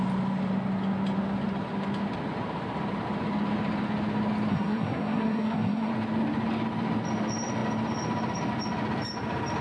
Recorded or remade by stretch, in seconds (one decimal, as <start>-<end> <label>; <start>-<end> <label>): 0.0-4.5 recorded; 4.5-5.9 remade; 5.9-9.6 recorded